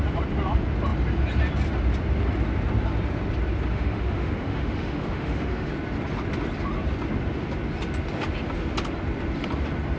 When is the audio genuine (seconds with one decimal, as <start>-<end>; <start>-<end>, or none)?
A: 0.0-3.7; 5.7-10.0

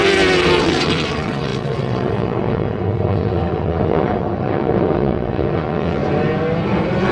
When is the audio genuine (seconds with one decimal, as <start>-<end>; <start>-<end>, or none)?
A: 0.0-0.6; 6.0-7.1

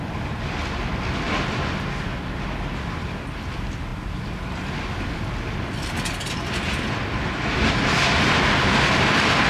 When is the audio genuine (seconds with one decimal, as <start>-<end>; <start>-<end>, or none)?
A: 0.0-9.5